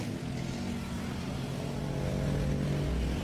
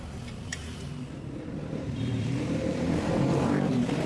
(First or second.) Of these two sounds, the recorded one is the first